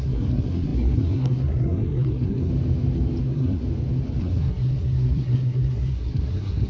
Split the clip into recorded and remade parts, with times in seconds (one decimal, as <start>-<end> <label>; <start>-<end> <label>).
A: 0.0-2.5 remade; 2.5-3.2 recorded; 3.2-3.6 remade; 3.6-4.2 recorded; 4.2-6.7 remade